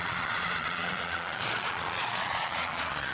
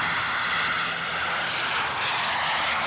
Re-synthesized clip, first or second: first